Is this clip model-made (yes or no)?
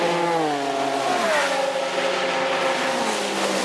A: no